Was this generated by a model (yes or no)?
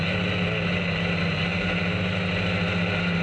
no